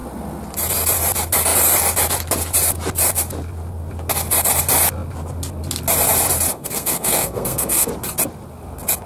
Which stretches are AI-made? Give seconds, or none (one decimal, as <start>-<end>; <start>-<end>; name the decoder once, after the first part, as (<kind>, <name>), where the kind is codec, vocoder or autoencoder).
6.5-7.9 (codec, SNAC)